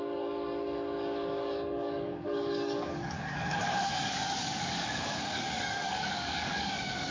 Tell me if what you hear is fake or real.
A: fake